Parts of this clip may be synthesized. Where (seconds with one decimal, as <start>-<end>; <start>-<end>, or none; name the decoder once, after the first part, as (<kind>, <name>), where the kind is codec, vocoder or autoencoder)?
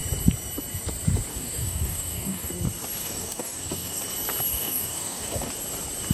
1.3-2.5 (codec, DAC); 3.0-4.0; 4.5-5.5